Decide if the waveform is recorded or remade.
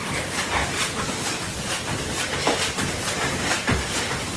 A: recorded